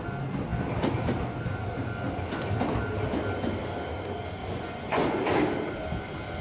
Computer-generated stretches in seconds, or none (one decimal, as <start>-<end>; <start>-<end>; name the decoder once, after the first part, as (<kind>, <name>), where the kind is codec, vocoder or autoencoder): 4.4-5.2 (vocoder, Vocos)